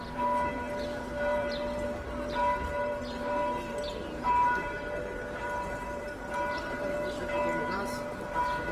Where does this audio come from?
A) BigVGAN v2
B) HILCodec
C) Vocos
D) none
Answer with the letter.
A